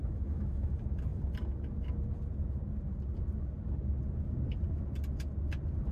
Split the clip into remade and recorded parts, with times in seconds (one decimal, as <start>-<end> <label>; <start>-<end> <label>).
0.0-0.7 remade; 0.7-5.9 recorded